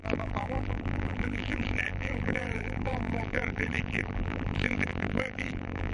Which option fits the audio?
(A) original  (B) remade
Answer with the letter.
B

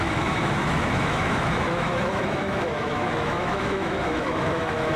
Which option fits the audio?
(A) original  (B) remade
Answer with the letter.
B